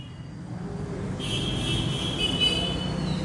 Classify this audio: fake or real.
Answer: real